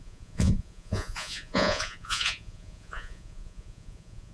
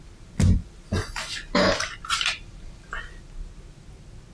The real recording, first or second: second